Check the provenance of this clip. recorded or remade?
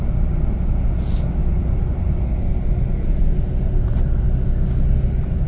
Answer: recorded